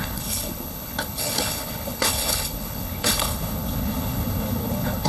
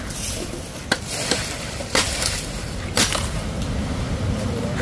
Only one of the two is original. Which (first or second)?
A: second